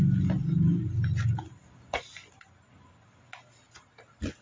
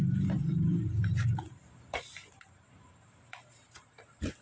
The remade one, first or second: second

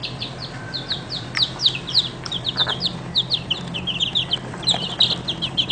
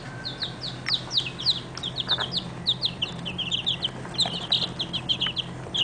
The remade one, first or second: first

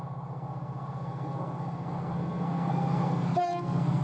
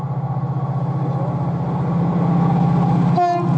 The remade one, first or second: first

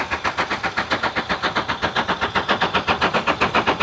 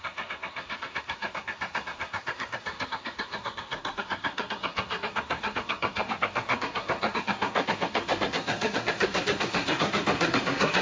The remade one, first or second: second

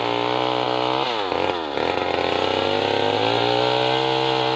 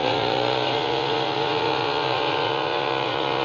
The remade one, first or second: second